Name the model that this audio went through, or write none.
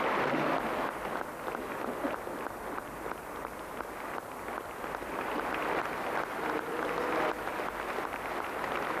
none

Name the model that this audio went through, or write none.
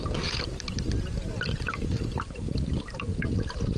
none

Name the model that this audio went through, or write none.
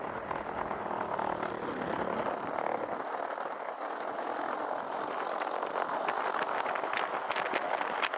none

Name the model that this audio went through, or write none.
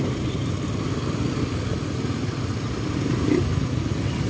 none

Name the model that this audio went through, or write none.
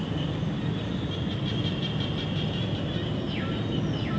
none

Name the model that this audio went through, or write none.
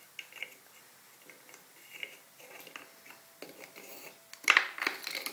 none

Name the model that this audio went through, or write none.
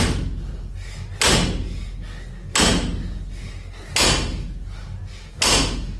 none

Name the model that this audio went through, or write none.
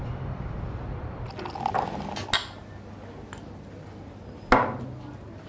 none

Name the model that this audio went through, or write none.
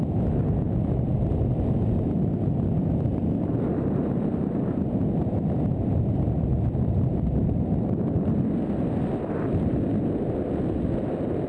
vocoder, BigVGAN v2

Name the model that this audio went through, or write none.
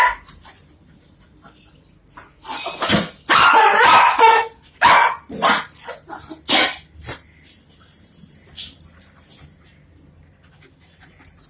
none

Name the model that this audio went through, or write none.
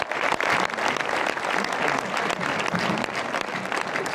none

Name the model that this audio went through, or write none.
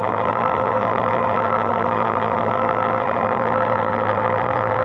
vocoder, BigVGAN v2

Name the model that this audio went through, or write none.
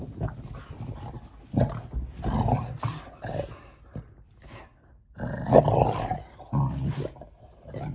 none